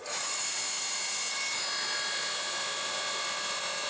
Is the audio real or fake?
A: real